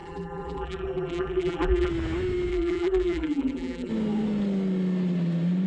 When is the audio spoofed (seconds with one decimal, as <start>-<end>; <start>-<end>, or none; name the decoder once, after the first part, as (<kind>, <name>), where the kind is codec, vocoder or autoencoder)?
0.0-1.9 (vocoder, BigVGAN v2); 2.5-3.9